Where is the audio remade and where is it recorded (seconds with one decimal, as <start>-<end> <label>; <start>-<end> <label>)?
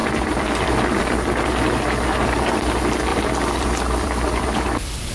0.0-1.2 remade; 1.2-3.1 recorded; 3.1-4.6 remade; 4.6-5.1 recorded